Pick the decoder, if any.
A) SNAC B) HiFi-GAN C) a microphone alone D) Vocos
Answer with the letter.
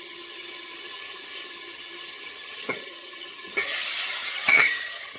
B